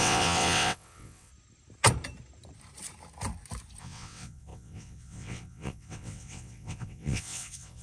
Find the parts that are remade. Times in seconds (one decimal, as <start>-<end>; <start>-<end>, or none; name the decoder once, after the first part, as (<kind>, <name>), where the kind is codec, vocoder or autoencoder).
0.0-1.3 (vocoder, WaveNeXt); 3.8-7.8